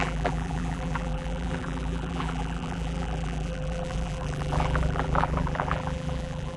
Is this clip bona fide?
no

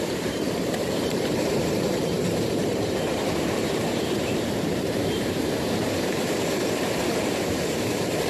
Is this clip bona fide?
no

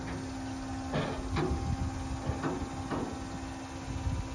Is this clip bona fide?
yes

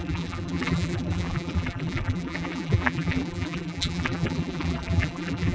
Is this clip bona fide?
no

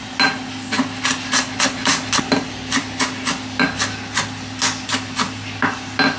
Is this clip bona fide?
yes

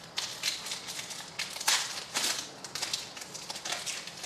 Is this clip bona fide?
yes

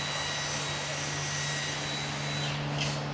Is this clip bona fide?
yes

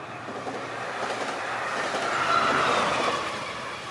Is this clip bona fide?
yes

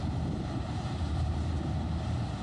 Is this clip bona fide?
no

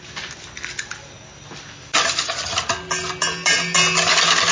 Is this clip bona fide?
yes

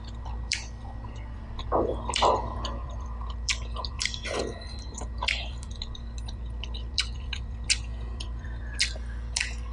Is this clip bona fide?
no